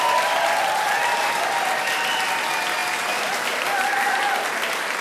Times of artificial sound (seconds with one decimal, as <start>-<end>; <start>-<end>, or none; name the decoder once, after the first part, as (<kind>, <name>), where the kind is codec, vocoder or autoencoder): none